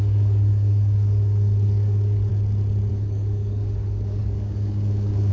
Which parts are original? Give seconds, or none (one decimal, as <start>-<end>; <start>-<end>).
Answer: 2.3-2.9